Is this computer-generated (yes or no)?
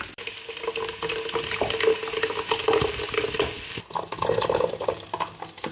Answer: no